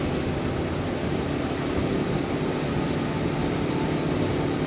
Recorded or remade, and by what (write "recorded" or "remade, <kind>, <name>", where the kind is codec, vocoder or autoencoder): remade, vocoder, BigVGAN v2